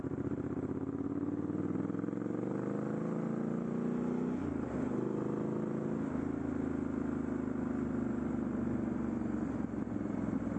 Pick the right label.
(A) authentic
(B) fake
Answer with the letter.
A